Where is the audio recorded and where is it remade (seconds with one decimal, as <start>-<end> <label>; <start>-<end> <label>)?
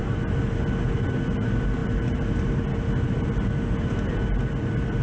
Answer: 0.0-5.0 recorded